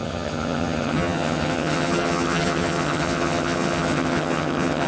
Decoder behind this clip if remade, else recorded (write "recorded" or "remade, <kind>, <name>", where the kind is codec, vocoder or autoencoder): remade, vocoder, HiFi-GAN